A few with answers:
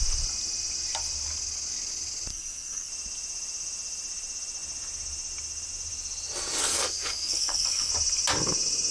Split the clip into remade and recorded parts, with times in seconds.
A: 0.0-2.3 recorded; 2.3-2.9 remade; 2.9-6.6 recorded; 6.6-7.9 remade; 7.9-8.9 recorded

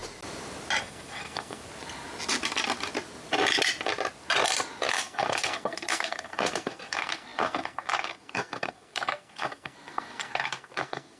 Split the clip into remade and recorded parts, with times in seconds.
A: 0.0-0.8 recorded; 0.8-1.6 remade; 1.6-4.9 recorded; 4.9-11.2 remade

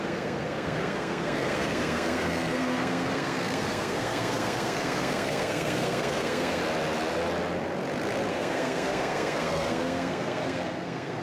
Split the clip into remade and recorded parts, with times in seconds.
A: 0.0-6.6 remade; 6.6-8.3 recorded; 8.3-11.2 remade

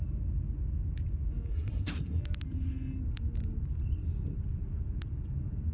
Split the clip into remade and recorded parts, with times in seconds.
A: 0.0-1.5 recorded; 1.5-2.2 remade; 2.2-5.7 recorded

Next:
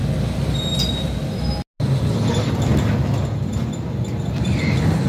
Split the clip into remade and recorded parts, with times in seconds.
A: 0.0-5.1 recorded